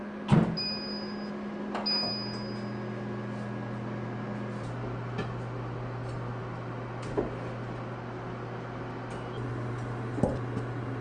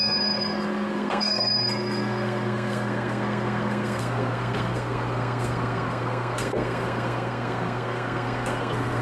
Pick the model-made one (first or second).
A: second